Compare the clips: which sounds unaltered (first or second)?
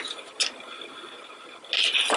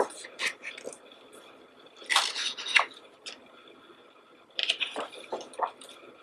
first